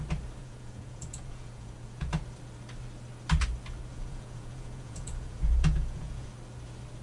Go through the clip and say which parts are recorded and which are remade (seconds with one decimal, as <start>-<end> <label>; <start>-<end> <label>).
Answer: 0.0-0.4 recorded; 0.4-2.1 remade; 2.1-3.9 recorded; 3.9-6.3 remade; 6.3-7.0 recorded

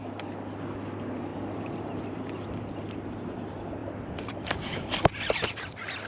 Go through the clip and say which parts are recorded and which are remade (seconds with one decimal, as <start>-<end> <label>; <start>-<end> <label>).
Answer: 0.0-1.3 recorded; 1.3-2.7 remade; 2.7-3.8 recorded; 3.8-6.1 remade

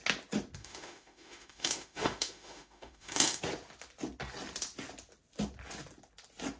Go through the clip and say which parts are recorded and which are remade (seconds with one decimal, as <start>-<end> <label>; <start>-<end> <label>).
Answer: 0.0-0.6 recorded; 0.6-3.4 remade; 3.4-6.6 recorded

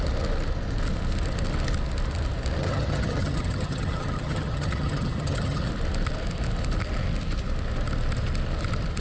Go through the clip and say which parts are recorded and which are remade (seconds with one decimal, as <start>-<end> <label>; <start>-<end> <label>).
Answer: 0.0-2.6 recorded; 2.6-5.7 remade; 5.7-9.0 recorded

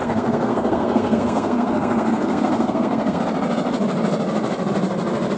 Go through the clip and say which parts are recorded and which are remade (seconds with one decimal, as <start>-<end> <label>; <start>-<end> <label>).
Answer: 0.0-3.2 remade; 3.2-5.4 recorded

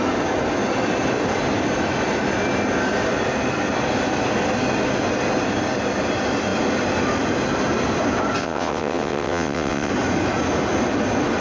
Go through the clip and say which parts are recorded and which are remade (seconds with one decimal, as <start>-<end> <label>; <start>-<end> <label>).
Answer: 0.0-8.4 recorded; 8.4-9.9 remade; 9.9-11.4 recorded

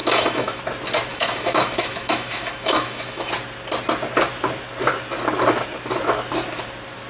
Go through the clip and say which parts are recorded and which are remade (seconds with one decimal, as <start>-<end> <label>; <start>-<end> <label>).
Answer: 0.0-0.6 remade; 0.6-1.1 recorded; 1.1-3.3 remade; 3.3-7.1 recorded

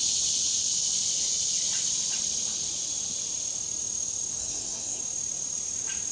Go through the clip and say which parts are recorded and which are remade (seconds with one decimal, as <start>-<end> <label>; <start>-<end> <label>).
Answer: 0.0-4.4 recorded; 4.4-5.0 remade; 5.0-6.1 recorded